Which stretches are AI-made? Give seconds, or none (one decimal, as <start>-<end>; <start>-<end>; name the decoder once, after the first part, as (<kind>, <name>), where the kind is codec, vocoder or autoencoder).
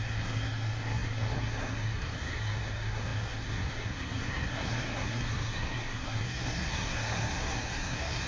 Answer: 0.0-8.3 (codec, SNAC)